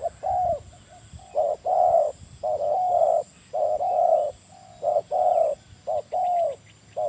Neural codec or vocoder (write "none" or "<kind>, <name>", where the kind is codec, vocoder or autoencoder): none